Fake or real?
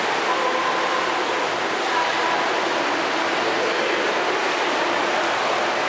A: real